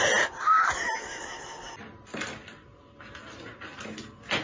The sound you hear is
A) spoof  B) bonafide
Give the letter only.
B